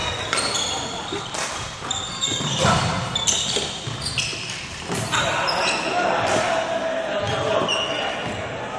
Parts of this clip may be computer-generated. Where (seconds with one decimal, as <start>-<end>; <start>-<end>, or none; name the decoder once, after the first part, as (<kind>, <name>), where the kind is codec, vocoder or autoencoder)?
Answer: 0.0-2.4 (vocoder, BigVGAN v2); 4.3-6.4